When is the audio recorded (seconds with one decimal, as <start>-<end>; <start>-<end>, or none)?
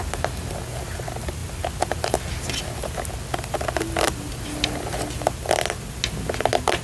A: 0.0-6.8